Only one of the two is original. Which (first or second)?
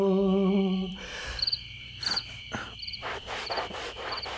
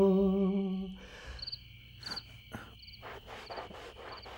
second